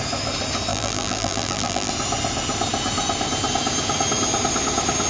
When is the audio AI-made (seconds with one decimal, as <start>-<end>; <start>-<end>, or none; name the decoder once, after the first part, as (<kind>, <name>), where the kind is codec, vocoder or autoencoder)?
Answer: 0.7-1.9 (vocoder, BigVGAN v2)

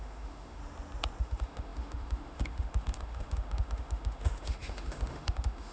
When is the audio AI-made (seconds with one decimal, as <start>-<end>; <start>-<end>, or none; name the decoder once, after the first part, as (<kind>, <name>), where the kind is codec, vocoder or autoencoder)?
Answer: 0.0-0.6 (autoencoder, DAC-VAE); 1.2-5.7